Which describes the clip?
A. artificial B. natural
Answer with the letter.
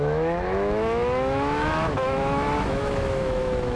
A